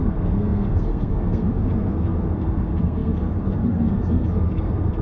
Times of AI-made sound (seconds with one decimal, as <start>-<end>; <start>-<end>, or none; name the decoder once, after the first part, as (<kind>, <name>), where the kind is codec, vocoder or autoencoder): 0.0-5.0 (codec, SNAC)